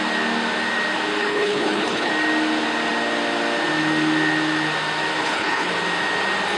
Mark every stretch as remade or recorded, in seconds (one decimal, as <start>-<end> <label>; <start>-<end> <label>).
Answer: 0.0-1.2 recorded; 1.2-2.1 remade; 2.1-5.2 recorded; 5.2-5.7 remade; 5.7-6.6 recorded

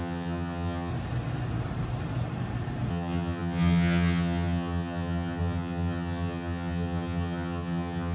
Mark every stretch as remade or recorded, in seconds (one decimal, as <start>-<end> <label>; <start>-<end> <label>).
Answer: 0.0-0.9 remade; 0.9-2.9 recorded; 2.9-8.1 remade

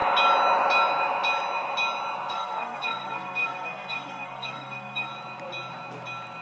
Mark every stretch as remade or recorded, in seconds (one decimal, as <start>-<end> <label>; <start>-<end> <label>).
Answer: 0.0-2.3 recorded; 2.3-5.1 remade; 5.1-6.4 recorded

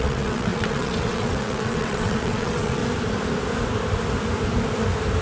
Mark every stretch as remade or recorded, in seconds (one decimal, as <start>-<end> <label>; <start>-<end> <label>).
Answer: 0.0-2.8 remade; 2.8-5.2 recorded

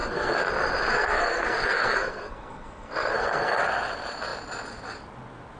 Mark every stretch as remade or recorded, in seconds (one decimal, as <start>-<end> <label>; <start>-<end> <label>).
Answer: 0.0-0.5 remade; 0.5-0.9 recorded; 0.9-3.6 remade; 3.6-5.6 recorded

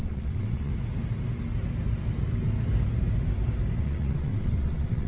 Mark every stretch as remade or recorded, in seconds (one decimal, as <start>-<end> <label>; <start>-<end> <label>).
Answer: 0.0-0.7 remade; 0.7-3.8 recorded; 3.8-5.1 remade

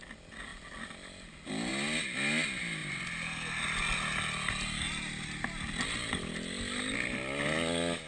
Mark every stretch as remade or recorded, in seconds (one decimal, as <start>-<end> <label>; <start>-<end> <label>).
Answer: 0.0-8.1 recorded

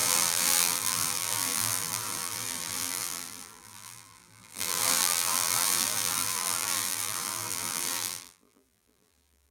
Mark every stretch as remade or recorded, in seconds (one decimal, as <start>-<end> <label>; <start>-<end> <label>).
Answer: 0.0-9.5 remade